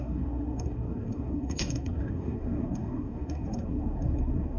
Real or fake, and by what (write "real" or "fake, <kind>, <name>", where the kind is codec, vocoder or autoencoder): fake, codec, SNAC